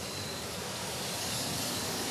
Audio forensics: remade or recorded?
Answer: remade